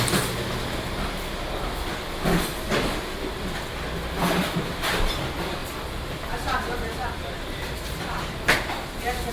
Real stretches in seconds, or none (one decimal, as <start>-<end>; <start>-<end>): 0.0-2.5; 3.3-5.6